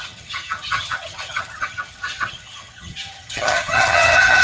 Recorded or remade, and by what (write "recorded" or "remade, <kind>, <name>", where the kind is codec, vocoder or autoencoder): remade, vocoder, HiFi-GAN